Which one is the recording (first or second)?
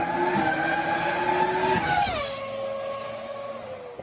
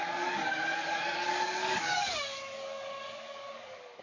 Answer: first